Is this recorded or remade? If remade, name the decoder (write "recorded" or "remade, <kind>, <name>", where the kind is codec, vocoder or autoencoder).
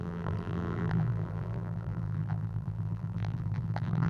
remade, vocoder, BigVGAN v2